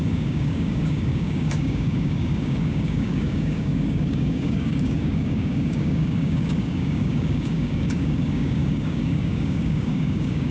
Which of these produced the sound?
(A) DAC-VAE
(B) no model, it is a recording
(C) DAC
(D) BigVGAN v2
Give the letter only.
C